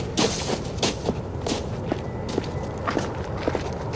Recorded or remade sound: recorded